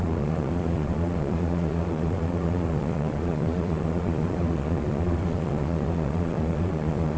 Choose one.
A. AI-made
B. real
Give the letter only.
A